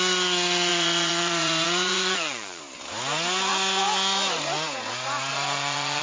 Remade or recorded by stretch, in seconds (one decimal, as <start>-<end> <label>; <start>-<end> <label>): 0.0-0.7 recorded; 0.7-2.6 remade; 2.6-5.3 recorded; 5.3-6.0 remade